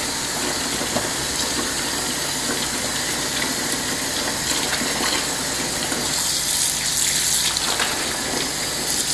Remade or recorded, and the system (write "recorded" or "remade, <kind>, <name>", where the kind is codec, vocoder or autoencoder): recorded